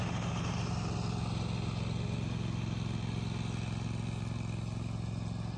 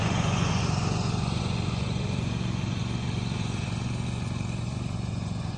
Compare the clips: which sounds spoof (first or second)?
second